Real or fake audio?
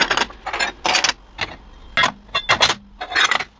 real